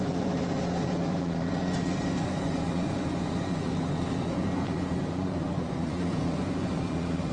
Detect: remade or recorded remade